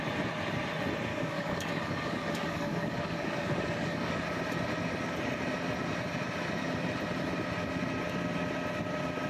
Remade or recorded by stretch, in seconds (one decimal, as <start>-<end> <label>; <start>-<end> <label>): 0.0-1.1 recorded; 1.1-4.2 remade; 4.2-9.3 recorded